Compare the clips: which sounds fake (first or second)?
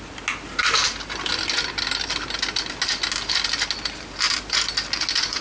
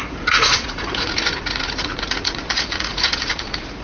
second